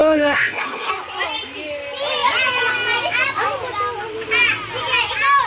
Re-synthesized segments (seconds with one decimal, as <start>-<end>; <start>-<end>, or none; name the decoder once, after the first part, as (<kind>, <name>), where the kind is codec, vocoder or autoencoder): 0.0-0.9 (codec, SNAC)